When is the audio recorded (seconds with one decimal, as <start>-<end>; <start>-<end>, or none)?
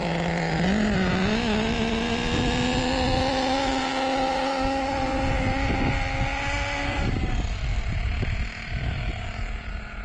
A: 0.0-10.0